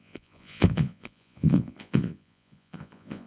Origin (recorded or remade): remade